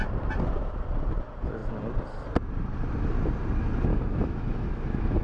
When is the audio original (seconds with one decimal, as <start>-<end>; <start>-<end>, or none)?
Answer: 0.0-3.9